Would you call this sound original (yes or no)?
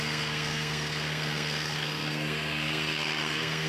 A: no